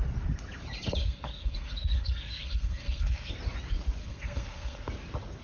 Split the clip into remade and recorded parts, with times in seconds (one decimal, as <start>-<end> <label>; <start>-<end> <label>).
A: 0.0-1.0 recorded; 1.0-3.3 remade; 3.3-4.0 recorded; 4.0-4.9 remade; 4.9-5.4 recorded